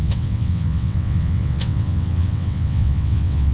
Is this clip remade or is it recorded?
remade